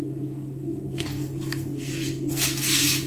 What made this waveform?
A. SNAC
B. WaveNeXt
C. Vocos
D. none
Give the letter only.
A